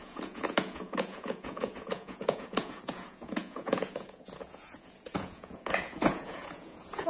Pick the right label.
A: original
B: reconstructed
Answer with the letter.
B